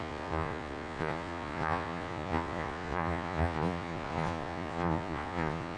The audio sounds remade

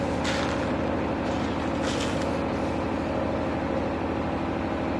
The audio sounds recorded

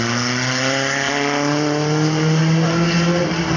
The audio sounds recorded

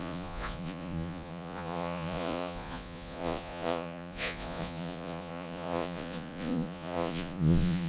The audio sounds remade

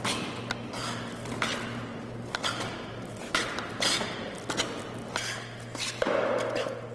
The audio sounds recorded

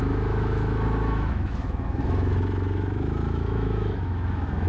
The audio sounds remade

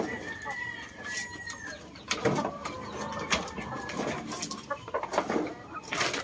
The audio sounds recorded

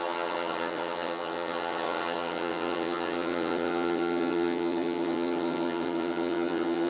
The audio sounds remade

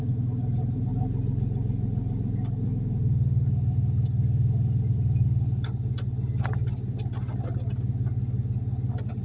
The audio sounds recorded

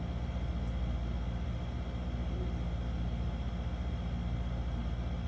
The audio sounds recorded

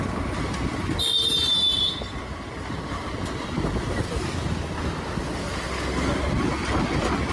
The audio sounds recorded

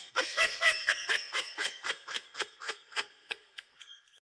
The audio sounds remade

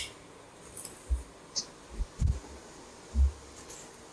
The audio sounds recorded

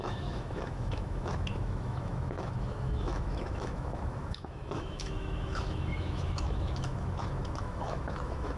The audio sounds remade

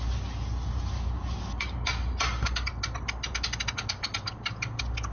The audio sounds recorded